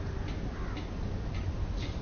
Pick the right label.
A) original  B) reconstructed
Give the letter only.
A